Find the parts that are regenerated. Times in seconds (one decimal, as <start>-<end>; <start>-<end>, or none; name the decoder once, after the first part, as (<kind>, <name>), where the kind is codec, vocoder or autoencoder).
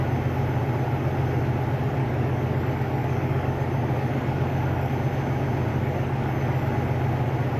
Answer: 2.0-4.9 (codec, DAC); 5.7-6.7